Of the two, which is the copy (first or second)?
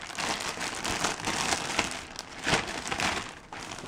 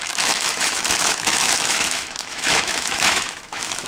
second